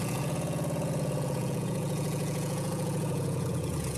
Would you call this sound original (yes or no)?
no